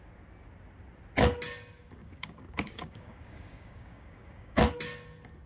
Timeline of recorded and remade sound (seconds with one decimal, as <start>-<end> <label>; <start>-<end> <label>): 0.0-2.0 recorded; 2.0-4.6 remade; 4.6-5.5 recorded